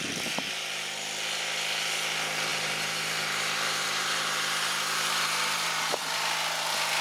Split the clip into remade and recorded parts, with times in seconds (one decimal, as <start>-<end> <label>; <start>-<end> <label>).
0.0-2.5 recorded; 2.5-6.0 remade; 6.0-7.0 recorded